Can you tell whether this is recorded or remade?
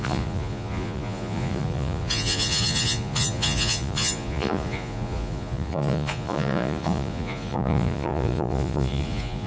remade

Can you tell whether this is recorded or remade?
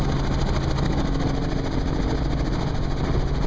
recorded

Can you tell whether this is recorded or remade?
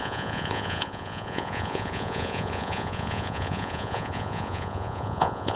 remade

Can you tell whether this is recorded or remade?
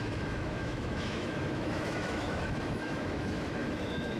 remade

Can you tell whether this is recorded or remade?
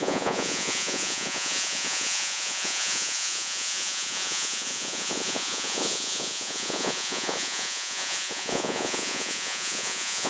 remade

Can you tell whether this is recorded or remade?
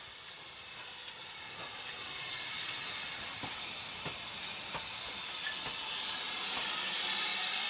recorded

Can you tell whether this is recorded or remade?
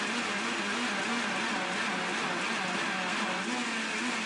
recorded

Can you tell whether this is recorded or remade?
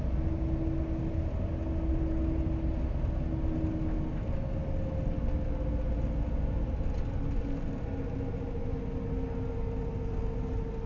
recorded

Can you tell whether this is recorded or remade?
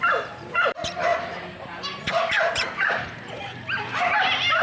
remade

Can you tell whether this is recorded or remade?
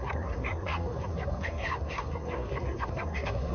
remade